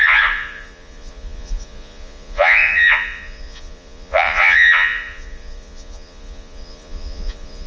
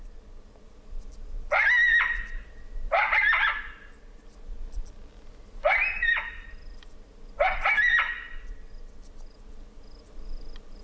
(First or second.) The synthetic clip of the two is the first